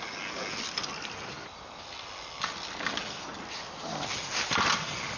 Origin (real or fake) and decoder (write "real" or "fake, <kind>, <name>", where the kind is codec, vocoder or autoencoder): real